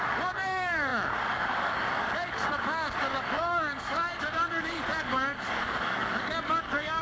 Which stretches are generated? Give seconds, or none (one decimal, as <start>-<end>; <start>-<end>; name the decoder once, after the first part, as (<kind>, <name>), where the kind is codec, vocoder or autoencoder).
0.0-7.0 (codec, DAC)